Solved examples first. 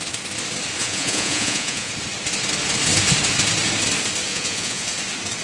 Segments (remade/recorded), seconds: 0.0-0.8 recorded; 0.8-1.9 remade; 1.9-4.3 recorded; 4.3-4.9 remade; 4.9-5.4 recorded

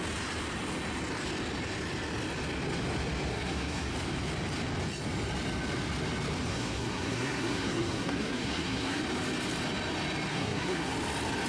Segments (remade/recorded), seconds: 0.0-3.3 recorded; 3.3-3.9 remade; 3.9-6.5 recorded; 6.5-9.0 remade; 9.0-10.3 recorded; 10.3-10.9 remade; 10.9-11.5 recorded